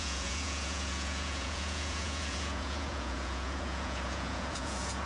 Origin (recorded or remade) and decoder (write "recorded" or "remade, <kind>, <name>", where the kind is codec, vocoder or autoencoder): remade, vocoder, Vocos